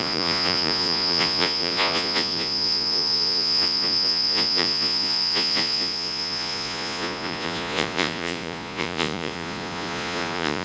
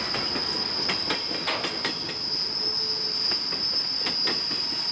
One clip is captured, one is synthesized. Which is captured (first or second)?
second